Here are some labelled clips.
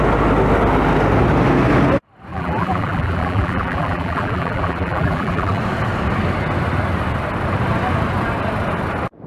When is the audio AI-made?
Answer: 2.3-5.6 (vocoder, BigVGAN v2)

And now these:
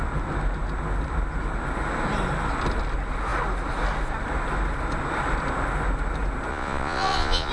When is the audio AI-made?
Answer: 6.5-7.5 (vocoder, Vocos)

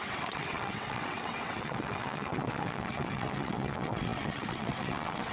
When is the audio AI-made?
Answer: 0.0-5.3 (vocoder, WaveNeXt)

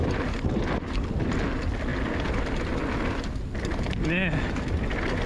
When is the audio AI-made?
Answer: none

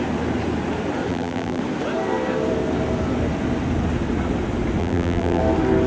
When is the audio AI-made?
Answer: 1.1-1.6 (vocoder, BigVGAN v2); 4.8-5.4

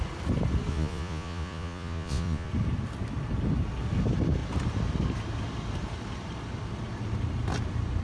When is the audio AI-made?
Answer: 0.7-2.5 (vocoder, Vocos)

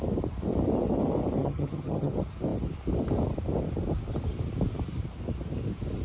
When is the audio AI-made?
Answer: 1.4-2.1 (vocoder, HiFi-GAN)